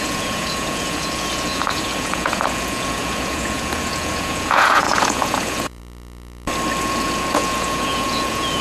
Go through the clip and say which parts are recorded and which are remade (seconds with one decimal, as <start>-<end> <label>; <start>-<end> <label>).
0.0-5.8 remade; 5.8-6.8 recorded; 6.8-8.6 remade